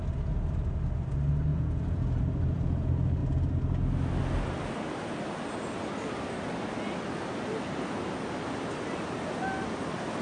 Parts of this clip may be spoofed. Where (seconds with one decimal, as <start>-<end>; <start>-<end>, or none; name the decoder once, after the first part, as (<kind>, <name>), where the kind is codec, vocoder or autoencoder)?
1.5-2.2 (vocoder, Vocos)